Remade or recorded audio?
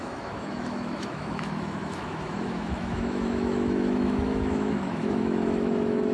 remade